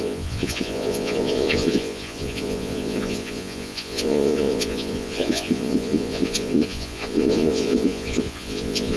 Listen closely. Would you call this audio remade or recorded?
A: remade